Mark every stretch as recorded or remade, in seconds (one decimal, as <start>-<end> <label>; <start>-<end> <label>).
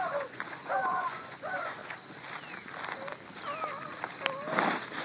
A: 0.0-1.8 remade; 1.8-5.0 recorded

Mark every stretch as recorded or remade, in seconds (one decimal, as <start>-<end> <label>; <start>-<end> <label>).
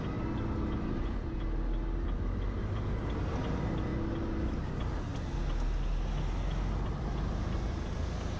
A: 0.0-8.4 recorded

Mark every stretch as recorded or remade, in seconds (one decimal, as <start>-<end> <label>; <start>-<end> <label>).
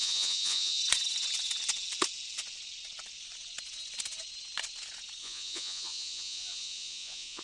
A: 0.0-0.8 remade; 0.8-5.2 recorded; 5.2-7.4 remade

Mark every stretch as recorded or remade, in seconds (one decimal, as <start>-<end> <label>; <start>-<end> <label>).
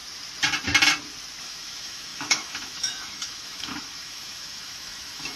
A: 0.0-1.4 recorded; 1.4-5.4 remade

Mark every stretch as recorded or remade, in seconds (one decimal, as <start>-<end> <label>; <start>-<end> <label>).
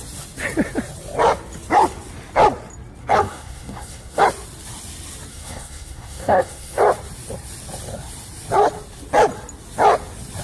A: 0.0-3.0 recorded; 3.0-4.2 remade; 4.2-5.3 recorded; 5.3-6.8 remade; 6.8-10.4 recorded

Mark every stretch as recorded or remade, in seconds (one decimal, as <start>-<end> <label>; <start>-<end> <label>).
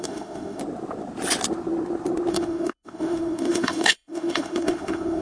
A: 0.0-0.6 remade; 0.6-2.3 recorded; 2.3-5.2 remade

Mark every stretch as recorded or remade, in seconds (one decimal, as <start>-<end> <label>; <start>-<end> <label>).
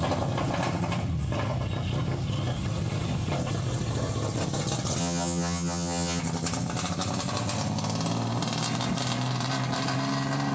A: 0.0-5.0 recorded; 5.0-6.2 remade; 6.2-10.5 recorded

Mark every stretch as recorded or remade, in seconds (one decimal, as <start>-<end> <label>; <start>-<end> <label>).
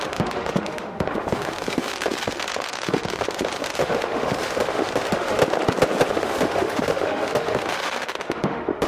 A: 0.0-5.4 remade; 5.4-6.1 recorded; 6.1-8.9 remade